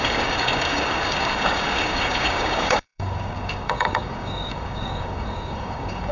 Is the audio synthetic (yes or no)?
yes